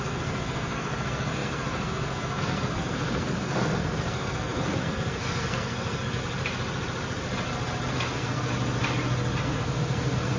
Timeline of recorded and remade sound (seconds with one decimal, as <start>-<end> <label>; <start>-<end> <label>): 0.0-6.2 remade; 6.2-7.9 recorded; 7.9-8.5 remade; 8.5-9.4 recorded; 9.4-10.4 remade